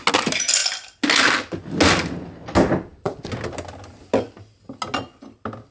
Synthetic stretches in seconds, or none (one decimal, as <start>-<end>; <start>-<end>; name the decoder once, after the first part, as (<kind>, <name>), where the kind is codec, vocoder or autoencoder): none